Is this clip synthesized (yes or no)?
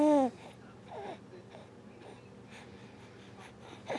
no